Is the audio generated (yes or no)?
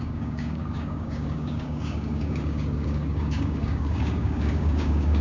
yes